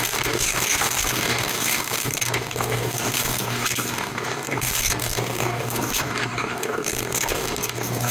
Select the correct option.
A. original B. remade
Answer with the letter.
B